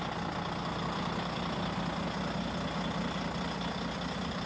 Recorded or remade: recorded